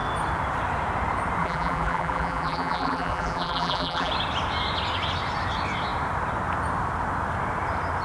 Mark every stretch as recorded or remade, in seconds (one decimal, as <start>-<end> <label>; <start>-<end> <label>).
0.0-1.4 recorded; 1.4-4.1 remade; 4.1-8.0 recorded